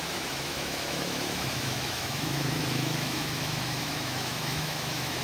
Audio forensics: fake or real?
fake